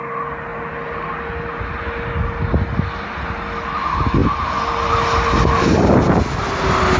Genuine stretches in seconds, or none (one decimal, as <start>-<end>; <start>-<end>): 0.0-7.0